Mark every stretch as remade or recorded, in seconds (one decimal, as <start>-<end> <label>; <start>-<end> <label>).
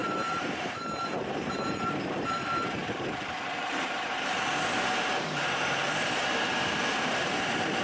0.0-7.8 remade